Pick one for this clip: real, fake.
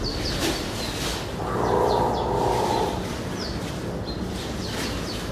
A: real